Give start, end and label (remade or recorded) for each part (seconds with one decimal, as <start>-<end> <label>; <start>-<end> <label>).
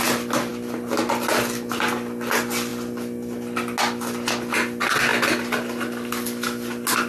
0.0-7.1 recorded